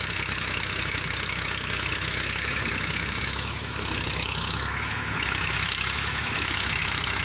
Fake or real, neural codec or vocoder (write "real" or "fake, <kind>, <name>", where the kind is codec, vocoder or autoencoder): fake, autoencoder, DAC-VAE